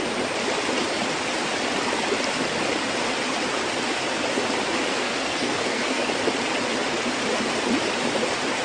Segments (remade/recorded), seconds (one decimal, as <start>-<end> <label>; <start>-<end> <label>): 0.0-4.9 recorded; 4.9-6.1 remade; 6.1-8.6 recorded

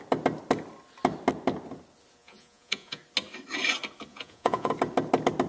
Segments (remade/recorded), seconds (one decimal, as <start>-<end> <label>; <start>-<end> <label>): 0.0-2.2 recorded; 2.2-3.0 remade; 3.0-4.1 recorded; 4.1-4.7 remade; 4.7-5.5 recorded

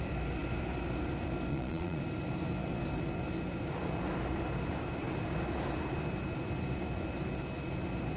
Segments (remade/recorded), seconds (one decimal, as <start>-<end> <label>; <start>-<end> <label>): 0.0-1.5 recorded; 1.5-2.0 remade; 2.0-8.2 recorded

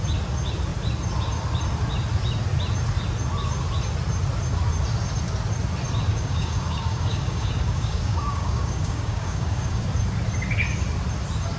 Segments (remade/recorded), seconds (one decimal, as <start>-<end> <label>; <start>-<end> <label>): 0.0-6.1 recorded; 6.1-9.8 remade; 9.8-11.6 recorded